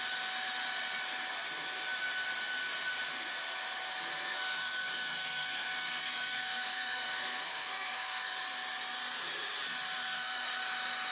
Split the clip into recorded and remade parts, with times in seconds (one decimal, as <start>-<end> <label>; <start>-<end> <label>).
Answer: 0.0-4.1 recorded; 4.1-8.3 remade; 8.3-10.0 recorded; 10.0-10.6 remade; 10.6-11.1 recorded